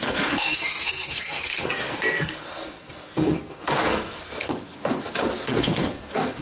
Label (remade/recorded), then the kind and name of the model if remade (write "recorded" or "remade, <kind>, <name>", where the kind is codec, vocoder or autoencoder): remade, codec, SNAC